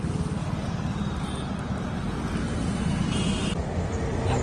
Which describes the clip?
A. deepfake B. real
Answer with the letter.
B